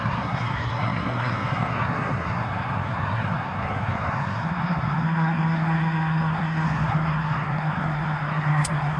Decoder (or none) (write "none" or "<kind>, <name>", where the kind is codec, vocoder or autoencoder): codec, SNAC